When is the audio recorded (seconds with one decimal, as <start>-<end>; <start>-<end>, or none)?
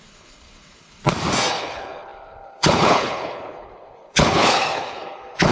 1.0-1.5